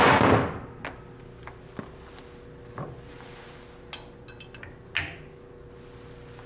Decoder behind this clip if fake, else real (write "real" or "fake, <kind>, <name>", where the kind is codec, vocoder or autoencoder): real